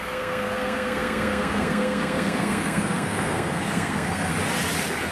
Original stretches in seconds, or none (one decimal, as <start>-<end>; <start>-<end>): 4.3-5.1